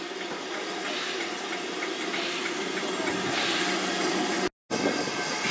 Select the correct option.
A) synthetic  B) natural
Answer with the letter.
B